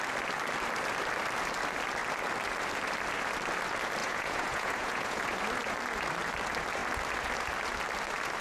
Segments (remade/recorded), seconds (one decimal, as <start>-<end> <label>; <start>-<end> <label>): 0.0-4.0 recorded; 4.0-5.2 remade; 5.2-8.4 recorded